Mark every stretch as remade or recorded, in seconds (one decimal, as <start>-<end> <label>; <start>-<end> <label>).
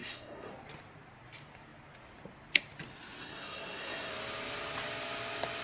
0.0-0.5 remade; 0.5-3.2 recorded; 3.2-4.1 remade; 4.1-5.6 recorded